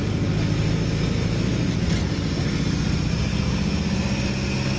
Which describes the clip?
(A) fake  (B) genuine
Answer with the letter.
B